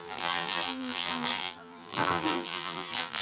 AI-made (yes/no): yes